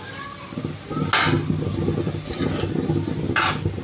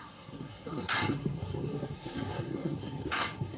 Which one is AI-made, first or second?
second